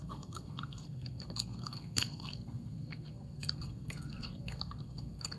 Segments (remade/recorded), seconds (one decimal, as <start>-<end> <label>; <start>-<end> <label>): 0.0-5.4 remade